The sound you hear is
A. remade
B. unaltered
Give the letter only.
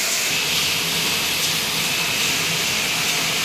B